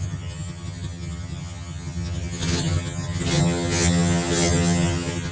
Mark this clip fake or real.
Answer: fake